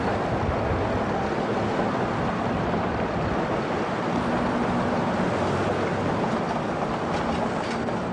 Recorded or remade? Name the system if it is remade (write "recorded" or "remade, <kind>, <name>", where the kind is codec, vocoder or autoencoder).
recorded